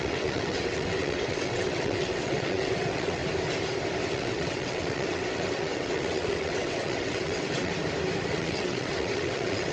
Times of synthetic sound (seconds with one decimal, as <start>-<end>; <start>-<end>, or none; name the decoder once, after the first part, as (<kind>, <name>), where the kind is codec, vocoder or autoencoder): 0.0-3.2 (vocoder, WaveNeXt); 4.1-7.7; 8.3-9.7